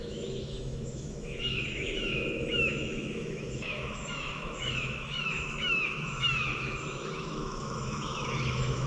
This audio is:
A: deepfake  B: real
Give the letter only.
A